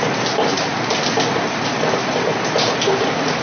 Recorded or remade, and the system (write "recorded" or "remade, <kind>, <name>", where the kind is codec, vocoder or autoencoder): recorded